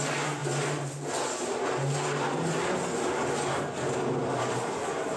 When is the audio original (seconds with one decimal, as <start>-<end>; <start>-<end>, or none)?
0.0-5.2